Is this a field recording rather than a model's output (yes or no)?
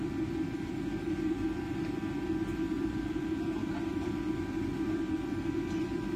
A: no